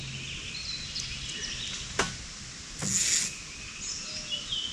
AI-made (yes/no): no